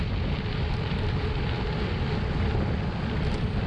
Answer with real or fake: real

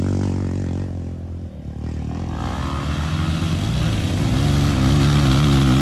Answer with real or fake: real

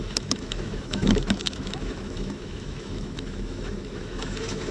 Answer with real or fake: fake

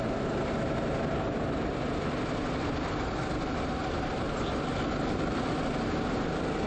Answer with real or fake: real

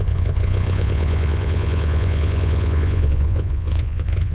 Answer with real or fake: fake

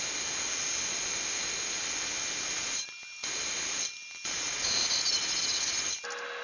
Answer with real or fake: real